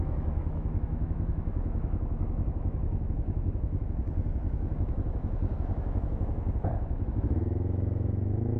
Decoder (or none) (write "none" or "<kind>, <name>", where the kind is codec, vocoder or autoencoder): autoencoder, DAC-VAE